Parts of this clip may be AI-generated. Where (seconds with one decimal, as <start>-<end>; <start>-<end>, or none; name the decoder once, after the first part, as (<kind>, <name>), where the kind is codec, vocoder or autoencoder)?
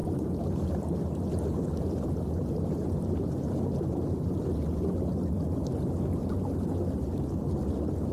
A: 4.1-4.6 (vocoder, BigVGAN v2)